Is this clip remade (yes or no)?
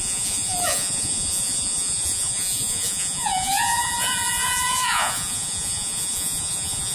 yes